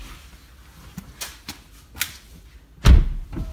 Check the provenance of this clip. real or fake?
real